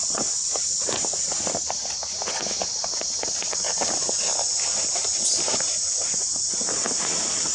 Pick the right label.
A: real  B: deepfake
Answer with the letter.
A